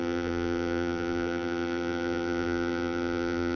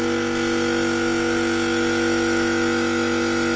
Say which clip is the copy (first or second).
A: first